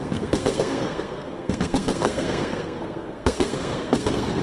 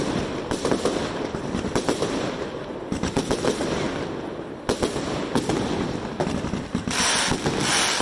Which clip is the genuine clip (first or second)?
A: second